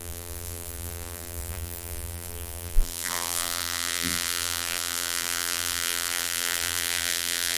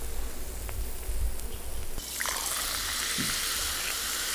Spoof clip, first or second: first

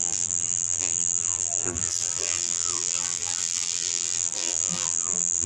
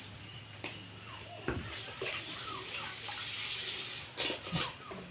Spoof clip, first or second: first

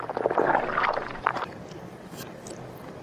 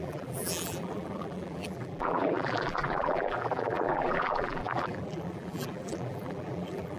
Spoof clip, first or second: second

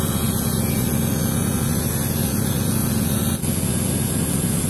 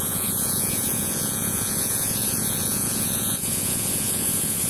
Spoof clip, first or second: second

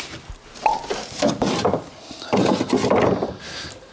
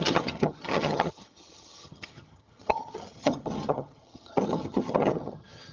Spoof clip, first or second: second